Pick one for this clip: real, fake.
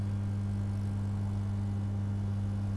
real